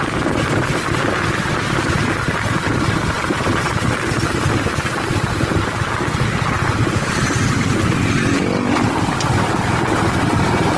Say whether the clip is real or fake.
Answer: real